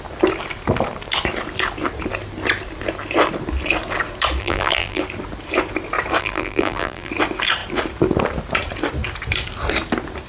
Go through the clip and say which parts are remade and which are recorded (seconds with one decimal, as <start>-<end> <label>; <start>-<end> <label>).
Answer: 0.0-4.4 recorded; 4.4-5.0 remade; 5.0-6.2 recorded; 6.2-7.1 remade; 7.1-10.3 recorded